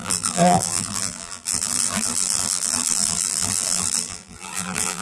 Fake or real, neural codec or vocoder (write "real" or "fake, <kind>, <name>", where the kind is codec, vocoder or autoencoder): fake, vocoder, BigVGAN v2